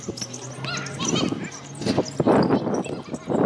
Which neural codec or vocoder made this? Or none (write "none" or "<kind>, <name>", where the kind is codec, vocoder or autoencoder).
none